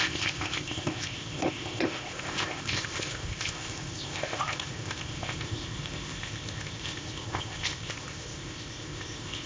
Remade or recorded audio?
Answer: remade